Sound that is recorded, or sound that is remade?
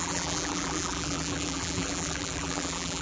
remade